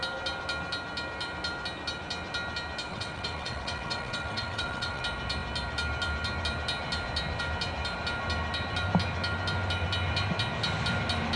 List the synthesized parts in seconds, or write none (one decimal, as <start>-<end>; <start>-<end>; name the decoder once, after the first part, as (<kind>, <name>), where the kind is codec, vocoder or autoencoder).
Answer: 2.9-5.0 (vocoder, WaveNeXt)